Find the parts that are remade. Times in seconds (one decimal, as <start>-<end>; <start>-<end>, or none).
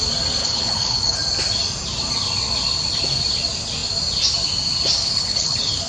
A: 0.4-1.2; 5.0-5.9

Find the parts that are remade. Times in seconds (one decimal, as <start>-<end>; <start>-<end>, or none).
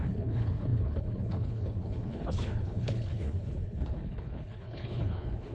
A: 0.0-5.5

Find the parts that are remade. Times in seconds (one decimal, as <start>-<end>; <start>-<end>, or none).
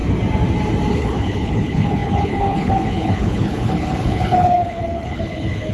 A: 0.9-5.7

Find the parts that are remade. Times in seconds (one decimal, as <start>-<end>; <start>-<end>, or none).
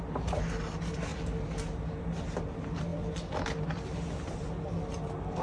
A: none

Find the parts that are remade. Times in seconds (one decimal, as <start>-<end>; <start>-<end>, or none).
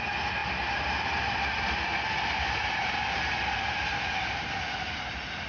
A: none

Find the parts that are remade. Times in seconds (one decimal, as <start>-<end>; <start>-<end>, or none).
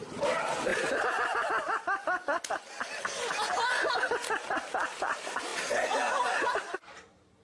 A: none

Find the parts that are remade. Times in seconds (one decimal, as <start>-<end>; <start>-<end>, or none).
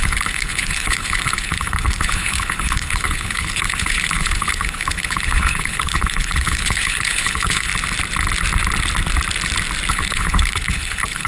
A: 0.0-7.7; 9.9-11.3